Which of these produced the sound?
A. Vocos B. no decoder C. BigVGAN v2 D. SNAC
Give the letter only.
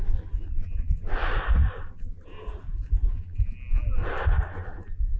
B